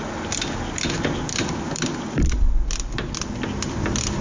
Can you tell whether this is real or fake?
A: real